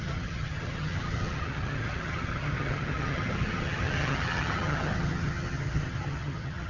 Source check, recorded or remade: remade